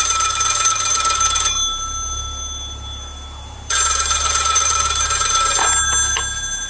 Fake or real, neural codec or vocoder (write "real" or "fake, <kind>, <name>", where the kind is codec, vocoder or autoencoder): fake, vocoder, BigVGAN v2